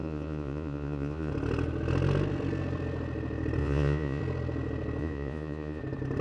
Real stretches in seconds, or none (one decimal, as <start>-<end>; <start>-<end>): 1.3-3.6; 4.2-5.0; 5.8-6.2